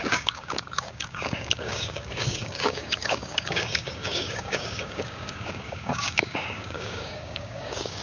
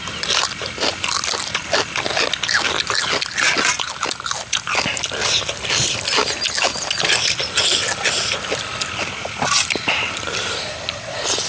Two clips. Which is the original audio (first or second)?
second